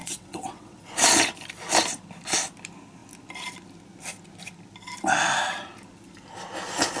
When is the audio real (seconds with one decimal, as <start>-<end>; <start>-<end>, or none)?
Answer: 0.8-7.0